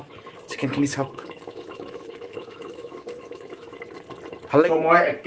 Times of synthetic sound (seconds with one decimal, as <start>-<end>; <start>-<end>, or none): 0.6-3.8